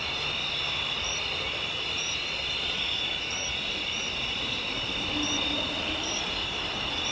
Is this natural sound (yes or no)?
no